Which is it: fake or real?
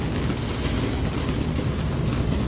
real